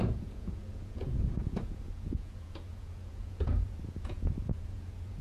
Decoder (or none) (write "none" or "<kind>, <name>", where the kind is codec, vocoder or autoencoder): vocoder, Vocos